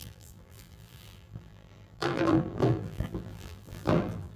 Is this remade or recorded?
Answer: remade